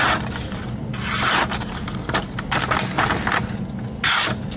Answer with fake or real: real